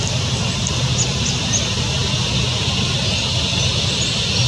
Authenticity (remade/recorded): recorded